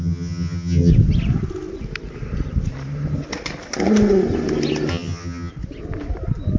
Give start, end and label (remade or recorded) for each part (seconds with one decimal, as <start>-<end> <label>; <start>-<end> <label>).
0.0-0.9 remade; 0.9-4.9 recorded; 4.9-5.5 remade; 5.5-6.6 recorded